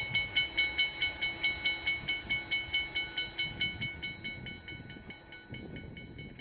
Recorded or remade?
recorded